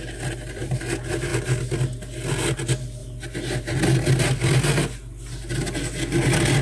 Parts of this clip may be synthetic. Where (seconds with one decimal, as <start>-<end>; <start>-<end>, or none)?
none